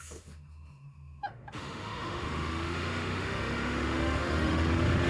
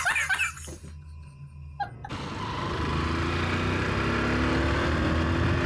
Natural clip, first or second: second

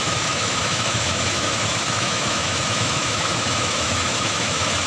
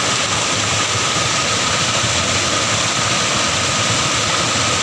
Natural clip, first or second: second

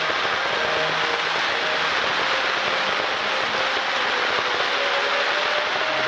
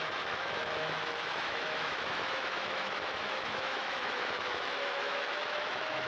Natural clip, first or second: first